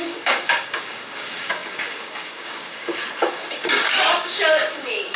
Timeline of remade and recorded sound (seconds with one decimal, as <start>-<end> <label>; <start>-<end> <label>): 0.0-5.2 remade